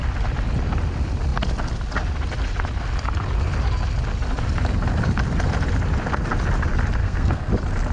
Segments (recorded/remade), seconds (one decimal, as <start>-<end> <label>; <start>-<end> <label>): 0.0-7.0 recorded; 7.0-7.5 remade; 7.5-7.9 recorded